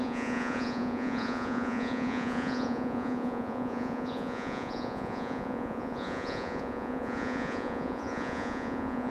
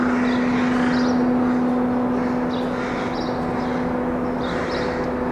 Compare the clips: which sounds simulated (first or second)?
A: first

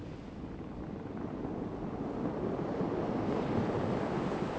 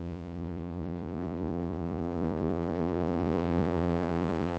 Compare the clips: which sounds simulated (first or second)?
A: second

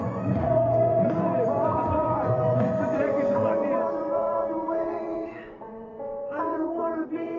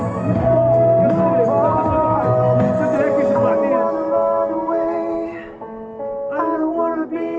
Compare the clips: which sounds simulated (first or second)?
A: first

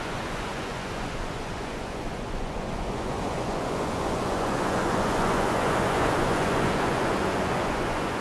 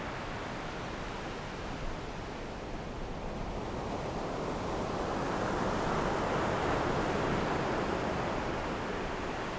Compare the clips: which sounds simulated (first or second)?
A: first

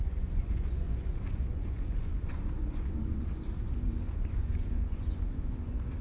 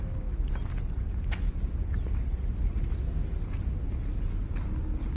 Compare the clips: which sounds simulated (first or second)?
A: first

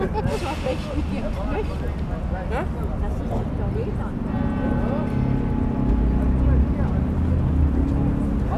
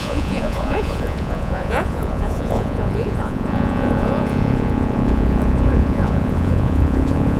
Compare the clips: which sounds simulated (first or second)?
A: second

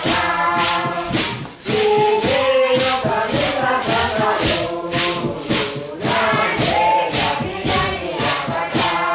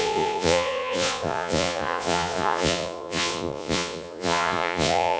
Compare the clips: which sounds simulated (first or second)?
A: second